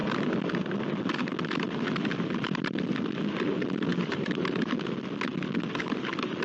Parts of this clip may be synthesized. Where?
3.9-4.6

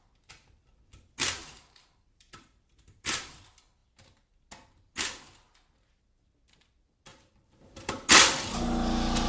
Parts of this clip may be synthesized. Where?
1.4-3.4; 7.1-7.9

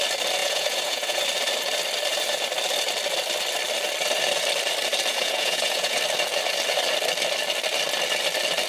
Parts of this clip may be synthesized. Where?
0.4-1.2; 5.1-6.0

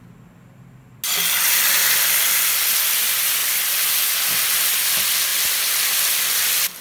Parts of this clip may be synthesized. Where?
3.4-4.3; 5.3-6.8

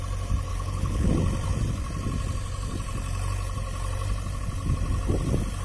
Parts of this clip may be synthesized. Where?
0.5-1.1